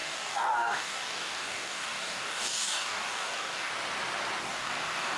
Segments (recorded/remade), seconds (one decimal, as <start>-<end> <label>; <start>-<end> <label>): 0.0-3.7 remade; 3.7-4.4 recorded; 4.4-5.2 remade